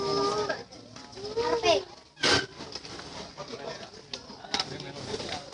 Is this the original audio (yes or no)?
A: yes